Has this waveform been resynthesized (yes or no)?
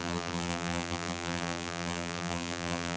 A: yes